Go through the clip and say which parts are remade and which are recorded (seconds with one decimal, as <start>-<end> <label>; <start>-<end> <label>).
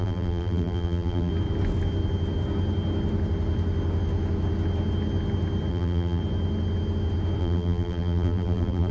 0.0-1.3 remade; 1.3-5.7 recorded; 5.7-6.2 remade; 6.2-7.4 recorded; 7.4-8.9 remade